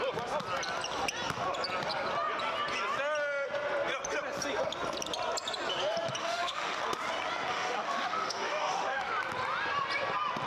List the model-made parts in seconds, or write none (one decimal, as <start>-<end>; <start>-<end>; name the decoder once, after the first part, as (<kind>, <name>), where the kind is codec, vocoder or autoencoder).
6.2-6.8 (autoencoder, DAC-VAE); 7.5-9.1